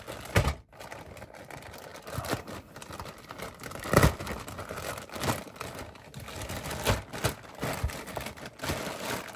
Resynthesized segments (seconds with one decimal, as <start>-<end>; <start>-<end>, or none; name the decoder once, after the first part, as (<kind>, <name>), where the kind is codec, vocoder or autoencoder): none